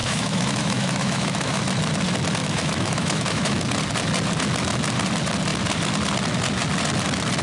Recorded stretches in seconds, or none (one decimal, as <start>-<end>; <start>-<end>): 1.6-2.4; 3.6-7.4